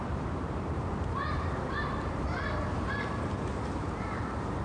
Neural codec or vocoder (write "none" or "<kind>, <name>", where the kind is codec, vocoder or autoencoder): vocoder, BigVGAN v2